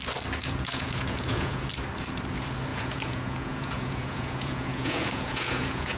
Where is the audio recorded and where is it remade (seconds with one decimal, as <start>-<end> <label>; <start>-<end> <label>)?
0.0-0.4 recorded; 0.4-1.7 remade; 1.7-2.7 recorded; 2.7-6.0 remade